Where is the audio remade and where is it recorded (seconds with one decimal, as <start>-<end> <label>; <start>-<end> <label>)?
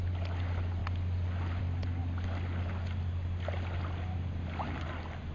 0.0-5.3 recorded